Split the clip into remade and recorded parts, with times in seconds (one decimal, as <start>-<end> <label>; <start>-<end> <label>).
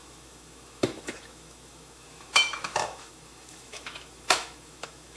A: 0.0-5.2 remade